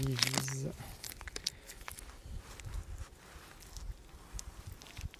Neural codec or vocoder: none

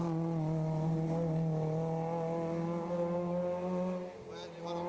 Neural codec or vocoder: none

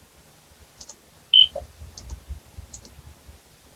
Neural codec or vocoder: none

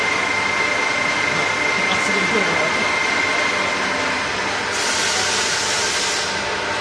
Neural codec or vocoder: none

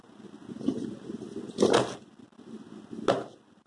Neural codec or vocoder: none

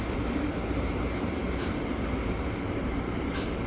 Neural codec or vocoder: vocoder, BigVGAN v2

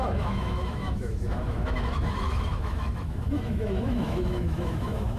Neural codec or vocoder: autoencoder, DAC-VAE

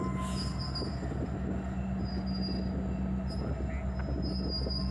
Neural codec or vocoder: none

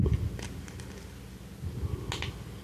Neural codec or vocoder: none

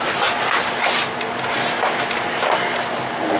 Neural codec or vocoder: none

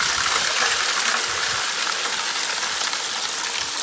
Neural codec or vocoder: none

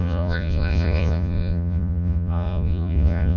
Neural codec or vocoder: vocoder, Vocos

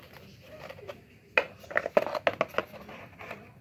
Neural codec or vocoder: none